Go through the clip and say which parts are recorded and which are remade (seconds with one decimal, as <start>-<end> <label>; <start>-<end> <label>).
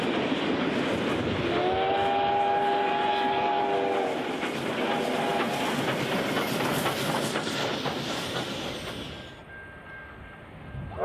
0.0-11.0 recorded